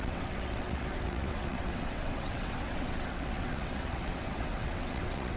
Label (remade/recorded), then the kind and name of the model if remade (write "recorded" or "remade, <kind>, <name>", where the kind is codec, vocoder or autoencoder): remade, vocoder, WaveNeXt